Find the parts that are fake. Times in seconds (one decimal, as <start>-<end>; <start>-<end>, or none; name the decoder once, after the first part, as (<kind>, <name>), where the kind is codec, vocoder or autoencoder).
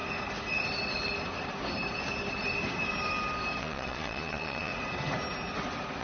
3.6-4.7 (vocoder, Vocos)